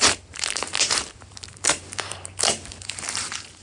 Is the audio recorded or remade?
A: remade